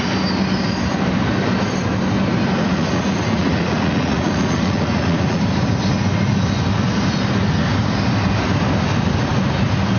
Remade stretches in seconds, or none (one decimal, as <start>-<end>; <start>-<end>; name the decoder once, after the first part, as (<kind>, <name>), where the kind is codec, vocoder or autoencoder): 2.6-5.4 (vocoder, Vocos)